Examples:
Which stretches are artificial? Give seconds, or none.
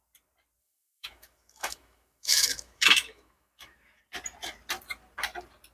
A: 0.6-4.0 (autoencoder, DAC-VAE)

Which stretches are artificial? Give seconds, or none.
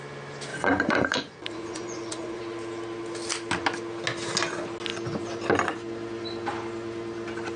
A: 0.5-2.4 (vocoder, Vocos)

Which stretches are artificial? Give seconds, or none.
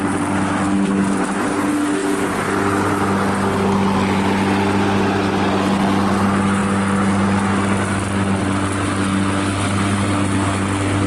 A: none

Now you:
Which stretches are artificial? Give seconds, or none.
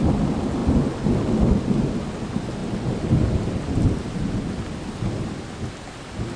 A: none